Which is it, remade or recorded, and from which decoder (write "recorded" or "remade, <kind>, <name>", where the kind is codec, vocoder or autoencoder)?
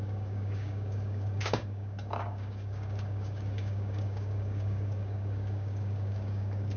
remade, codec, DAC